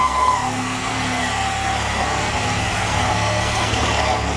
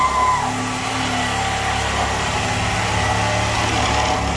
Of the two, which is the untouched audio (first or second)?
second